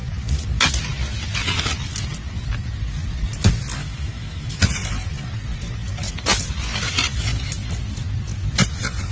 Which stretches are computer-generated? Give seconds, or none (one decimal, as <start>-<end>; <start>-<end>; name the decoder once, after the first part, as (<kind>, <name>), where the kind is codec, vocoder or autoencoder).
3.8-4.6 (autoencoder, DAC-VAE)